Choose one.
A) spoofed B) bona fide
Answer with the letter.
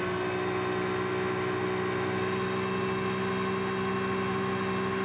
B